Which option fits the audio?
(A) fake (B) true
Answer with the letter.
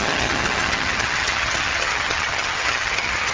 A